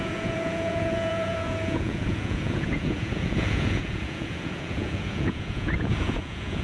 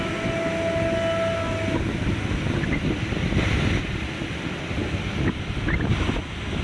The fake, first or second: first